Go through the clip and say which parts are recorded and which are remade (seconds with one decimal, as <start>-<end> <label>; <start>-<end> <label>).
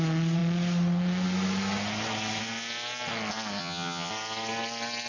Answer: 0.0-3.6 recorded; 3.6-4.1 remade; 4.1-5.1 recorded